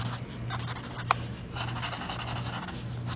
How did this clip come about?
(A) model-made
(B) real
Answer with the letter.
B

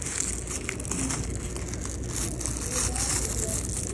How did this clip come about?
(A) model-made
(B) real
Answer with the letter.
B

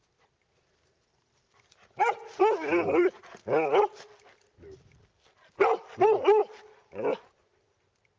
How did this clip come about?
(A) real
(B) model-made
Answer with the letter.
A